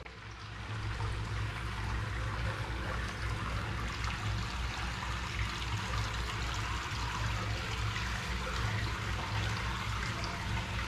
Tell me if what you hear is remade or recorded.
recorded